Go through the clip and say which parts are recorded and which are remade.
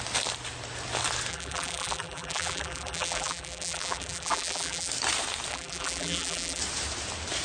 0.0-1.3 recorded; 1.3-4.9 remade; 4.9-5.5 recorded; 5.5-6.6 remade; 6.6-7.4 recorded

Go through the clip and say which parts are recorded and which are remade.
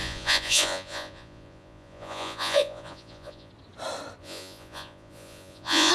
0.0-3.5 remade; 3.5-4.2 recorded; 4.2-5.9 remade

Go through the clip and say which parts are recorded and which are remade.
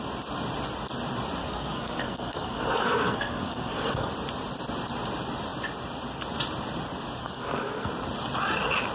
0.0-1.4 recorded; 1.4-4.1 remade; 4.1-7.2 recorded; 7.2-7.9 remade; 7.9-8.9 recorded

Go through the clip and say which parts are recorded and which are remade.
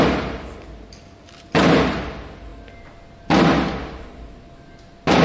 0.0-5.2 recorded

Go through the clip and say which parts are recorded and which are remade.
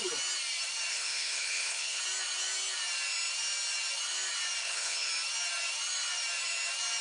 0.0-0.9 recorded; 0.9-2.0 remade; 2.0-4.6 recorded; 4.6-5.1 remade; 5.1-7.0 recorded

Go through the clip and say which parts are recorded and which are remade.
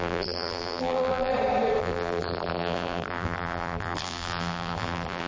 0.0-1.3 remade; 1.3-1.8 recorded; 1.8-5.3 remade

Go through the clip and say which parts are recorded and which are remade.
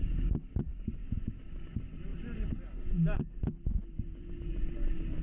0.0-1.0 recorded; 1.0-1.5 remade; 1.5-5.2 recorded